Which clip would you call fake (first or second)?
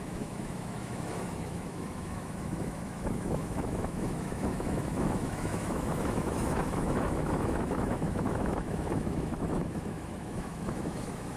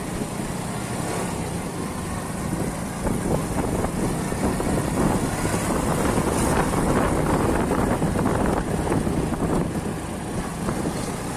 first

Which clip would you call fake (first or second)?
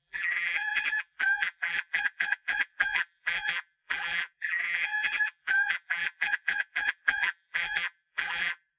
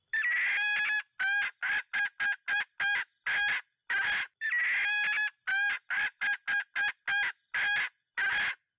first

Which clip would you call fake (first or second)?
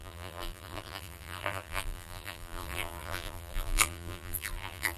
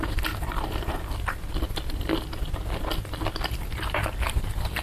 first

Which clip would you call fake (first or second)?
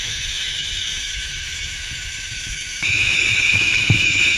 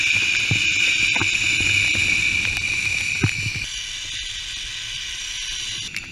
first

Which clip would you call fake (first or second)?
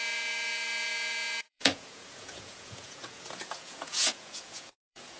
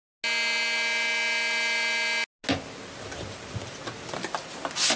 first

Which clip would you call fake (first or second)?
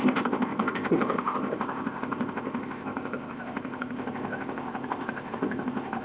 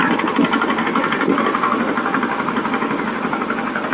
first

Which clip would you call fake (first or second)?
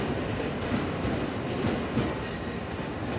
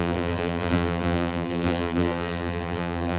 second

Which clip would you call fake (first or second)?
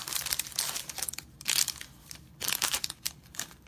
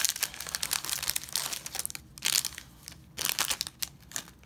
first